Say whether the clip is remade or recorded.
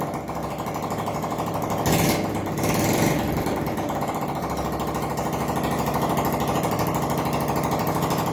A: recorded